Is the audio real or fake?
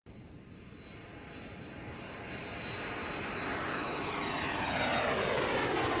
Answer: real